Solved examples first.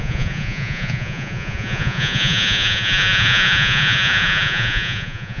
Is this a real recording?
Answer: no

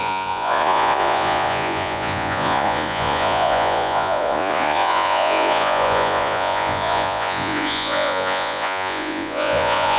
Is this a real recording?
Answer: no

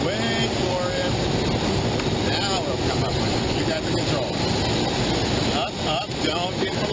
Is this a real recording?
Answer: yes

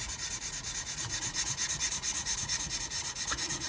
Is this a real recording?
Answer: no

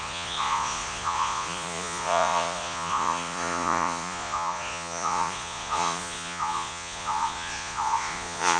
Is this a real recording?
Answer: no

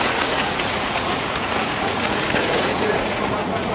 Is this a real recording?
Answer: no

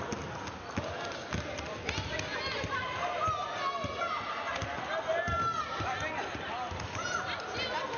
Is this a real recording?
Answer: yes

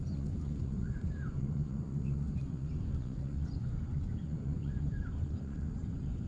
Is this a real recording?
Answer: no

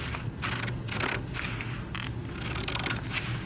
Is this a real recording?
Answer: yes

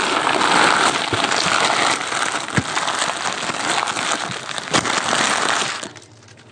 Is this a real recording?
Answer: yes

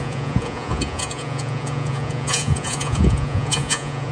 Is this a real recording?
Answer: no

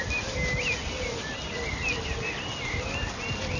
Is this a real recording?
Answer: yes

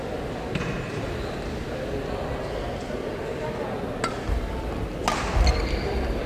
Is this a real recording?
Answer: yes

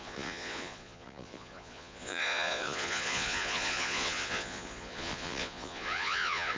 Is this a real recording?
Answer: no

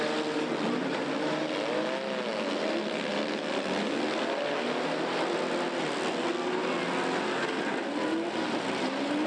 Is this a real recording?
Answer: yes